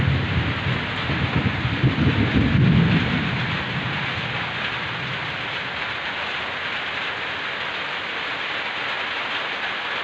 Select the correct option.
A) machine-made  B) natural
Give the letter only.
B